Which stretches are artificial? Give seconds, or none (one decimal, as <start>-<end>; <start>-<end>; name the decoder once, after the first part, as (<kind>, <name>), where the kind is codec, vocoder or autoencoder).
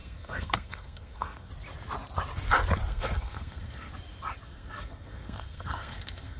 0.0-1.5 (codec, SNAC); 2.9-3.9; 4.4-6.4